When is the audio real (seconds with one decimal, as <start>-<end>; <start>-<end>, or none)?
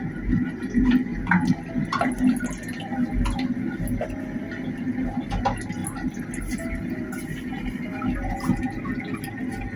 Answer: 0.0-9.8